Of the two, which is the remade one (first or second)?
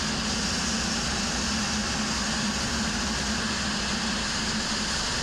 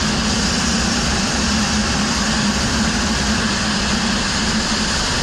second